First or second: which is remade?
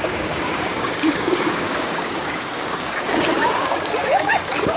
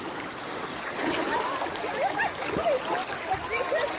first